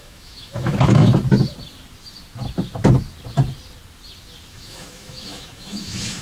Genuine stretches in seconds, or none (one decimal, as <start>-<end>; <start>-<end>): 1.1-4.5